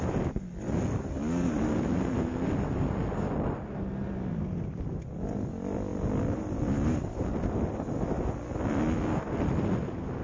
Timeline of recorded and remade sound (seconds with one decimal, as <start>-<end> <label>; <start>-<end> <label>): 0.0-10.2 recorded